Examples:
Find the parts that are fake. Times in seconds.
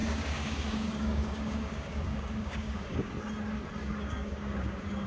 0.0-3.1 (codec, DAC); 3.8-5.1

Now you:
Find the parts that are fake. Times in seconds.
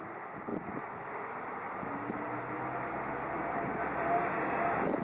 none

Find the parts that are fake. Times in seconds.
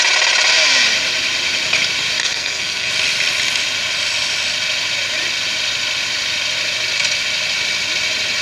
2.2-2.9 (codec, SNAC)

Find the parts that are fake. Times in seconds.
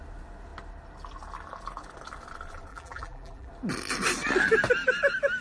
2.7-3.5 (vocoder, BigVGAN v2)